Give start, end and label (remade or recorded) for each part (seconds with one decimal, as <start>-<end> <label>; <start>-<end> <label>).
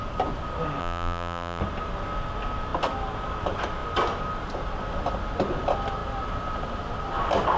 0.0-0.8 recorded; 0.8-1.6 remade; 1.6-7.6 recorded